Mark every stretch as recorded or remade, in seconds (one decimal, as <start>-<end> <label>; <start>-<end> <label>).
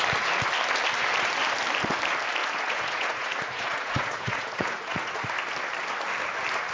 0.0-2.4 recorded; 2.4-5.3 remade; 5.3-6.7 recorded